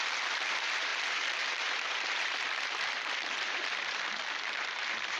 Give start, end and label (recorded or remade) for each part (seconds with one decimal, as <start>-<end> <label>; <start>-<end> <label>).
0.0-5.2 remade